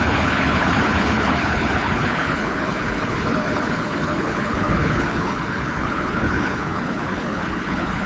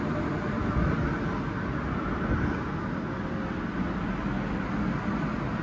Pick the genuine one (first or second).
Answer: second